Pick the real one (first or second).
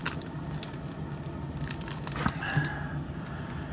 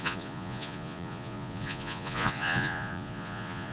first